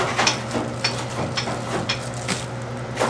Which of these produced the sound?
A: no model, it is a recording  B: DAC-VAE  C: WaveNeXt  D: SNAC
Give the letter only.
A